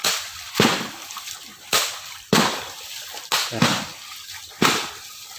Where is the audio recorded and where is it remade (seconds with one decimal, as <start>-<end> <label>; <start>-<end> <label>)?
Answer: 0.0-3.2 remade; 3.2-5.4 recorded